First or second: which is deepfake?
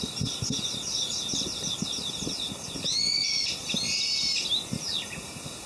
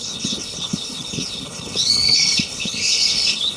second